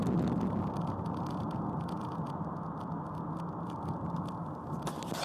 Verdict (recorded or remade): recorded